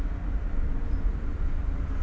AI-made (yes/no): no